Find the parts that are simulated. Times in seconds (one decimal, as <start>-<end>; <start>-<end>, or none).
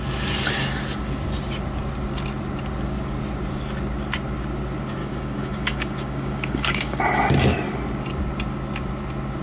5.0-7.0